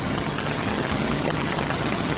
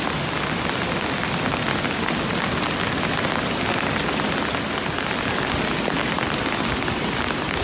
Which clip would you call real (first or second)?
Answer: second